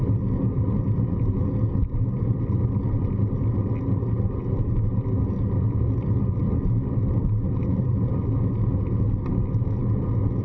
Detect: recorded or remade recorded